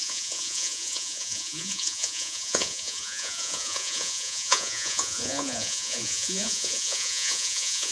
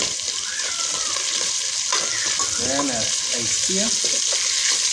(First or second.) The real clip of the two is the second